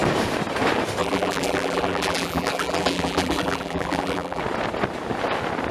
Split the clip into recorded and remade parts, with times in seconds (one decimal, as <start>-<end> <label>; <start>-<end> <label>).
0.0-1.0 recorded; 1.0-4.4 remade; 4.4-5.7 recorded